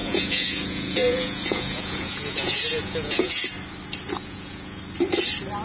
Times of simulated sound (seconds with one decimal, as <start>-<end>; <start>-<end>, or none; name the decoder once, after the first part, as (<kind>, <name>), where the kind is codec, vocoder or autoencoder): 0.0-3.4 (vocoder, Vocos); 4.2-4.8